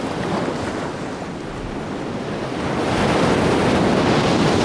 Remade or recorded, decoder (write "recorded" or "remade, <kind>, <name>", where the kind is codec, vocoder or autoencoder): recorded